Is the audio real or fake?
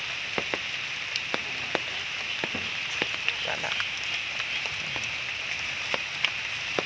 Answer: real